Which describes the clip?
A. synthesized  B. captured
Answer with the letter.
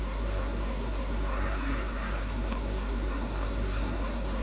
A